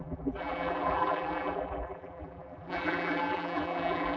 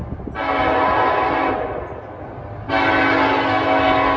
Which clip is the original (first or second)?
second